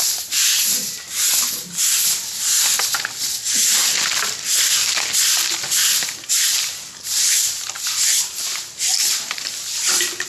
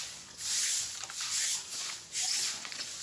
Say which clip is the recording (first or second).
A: first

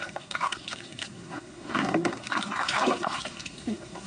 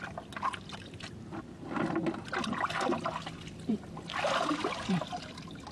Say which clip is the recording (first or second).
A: second